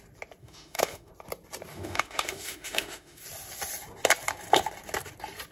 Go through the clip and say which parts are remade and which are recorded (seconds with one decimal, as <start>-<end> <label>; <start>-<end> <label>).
0.0-0.4 recorded; 0.4-1.1 remade; 1.1-1.7 recorded; 1.7-3.2 remade; 3.2-5.5 recorded